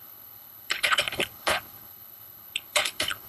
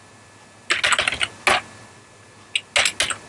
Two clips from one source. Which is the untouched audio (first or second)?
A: second